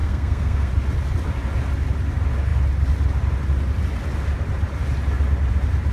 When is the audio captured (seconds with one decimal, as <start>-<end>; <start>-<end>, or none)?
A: 0.7-5.9

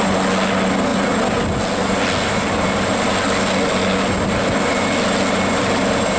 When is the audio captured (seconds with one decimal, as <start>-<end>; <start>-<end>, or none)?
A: 0.0-6.2

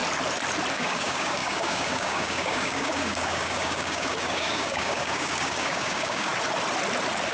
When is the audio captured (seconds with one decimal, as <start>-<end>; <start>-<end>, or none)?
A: 0.0-0.7; 6.3-7.3

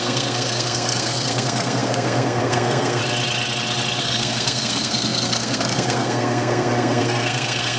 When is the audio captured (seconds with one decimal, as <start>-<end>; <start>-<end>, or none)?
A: 3.0-4.0

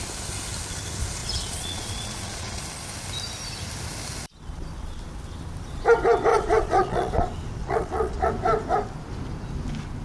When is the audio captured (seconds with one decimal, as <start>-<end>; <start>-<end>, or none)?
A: 0.0-1.2; 2.6-6.3; 7.1-7.6; 8.3-10.0

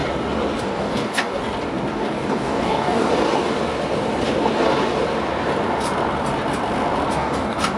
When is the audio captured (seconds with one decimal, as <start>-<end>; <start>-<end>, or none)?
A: 0.0-0.6; 1.4-1.9; 3.1-7.1